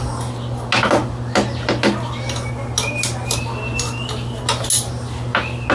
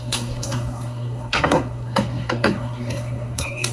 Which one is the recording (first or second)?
first